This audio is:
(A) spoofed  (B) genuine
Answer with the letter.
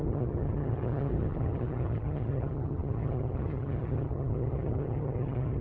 A